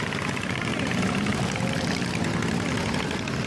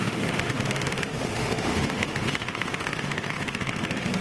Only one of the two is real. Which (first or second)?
first